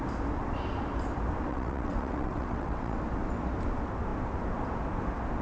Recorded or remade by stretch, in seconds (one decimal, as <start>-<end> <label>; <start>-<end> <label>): 0.0-1.5 recorded; 1.5-3.0 remade; 3.0-5.4 recorded